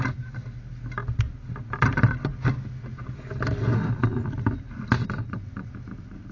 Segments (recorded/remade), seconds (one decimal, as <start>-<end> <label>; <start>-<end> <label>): 0.0-6.3 recorded